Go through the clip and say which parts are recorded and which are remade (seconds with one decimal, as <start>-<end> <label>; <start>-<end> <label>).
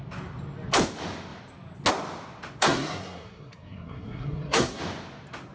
0.0-2.6 recorded; 2.6-4.8 remade; 4.8-5.5 recorded